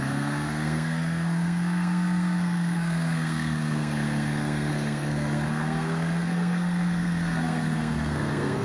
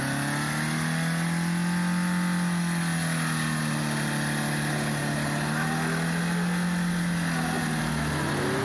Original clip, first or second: second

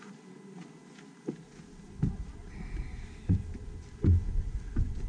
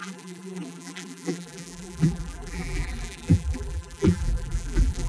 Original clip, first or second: first